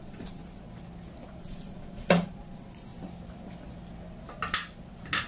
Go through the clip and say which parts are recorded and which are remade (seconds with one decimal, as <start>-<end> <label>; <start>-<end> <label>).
0.0-0.4 remade; 0.4-1.4 recorded; 1.4-2.9 remade; 2.9-5.3 recorded